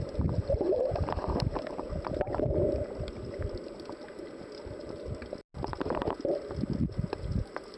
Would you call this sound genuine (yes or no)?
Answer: yes